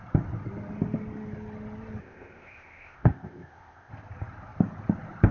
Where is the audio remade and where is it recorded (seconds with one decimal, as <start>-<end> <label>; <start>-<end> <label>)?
0.0-2.0 recorded; 2.0-3.9 remade; 3.9-5.3 recorded